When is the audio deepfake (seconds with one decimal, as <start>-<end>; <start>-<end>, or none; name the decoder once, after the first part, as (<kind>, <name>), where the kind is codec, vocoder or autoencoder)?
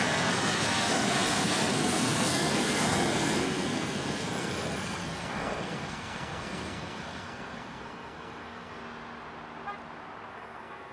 0.0-8.8 (codec, SNAC); 10.3-10.9